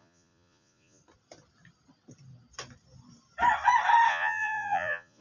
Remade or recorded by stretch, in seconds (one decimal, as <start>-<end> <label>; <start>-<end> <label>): 0.0-1.0 remade; 1.0-4.1 recorded; 4.1-5.2 remade